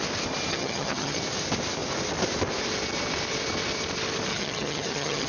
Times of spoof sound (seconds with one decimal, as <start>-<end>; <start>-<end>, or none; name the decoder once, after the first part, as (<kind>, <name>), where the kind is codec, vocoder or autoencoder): 0.5-1.2 (vocoder, HiFi-GAN); 4.3-5.3